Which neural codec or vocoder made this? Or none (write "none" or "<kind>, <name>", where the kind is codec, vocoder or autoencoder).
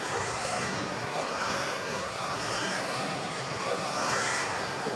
codec, SNAC